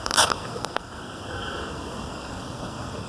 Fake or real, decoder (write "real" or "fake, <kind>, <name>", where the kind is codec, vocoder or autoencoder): fake, codec, SNAC